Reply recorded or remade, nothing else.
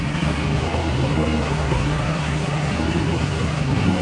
remade